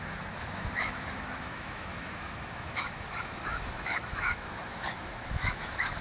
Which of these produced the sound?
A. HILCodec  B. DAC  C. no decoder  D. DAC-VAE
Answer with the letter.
D